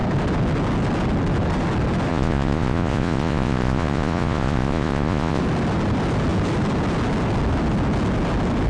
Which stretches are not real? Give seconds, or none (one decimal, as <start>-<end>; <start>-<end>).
2.1-5.4